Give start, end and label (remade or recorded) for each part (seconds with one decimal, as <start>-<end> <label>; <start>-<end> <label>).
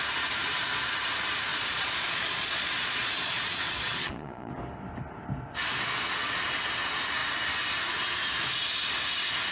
0.0-1.5 recorded; 1.5-4.5 remade; 4.5-9.5 recorded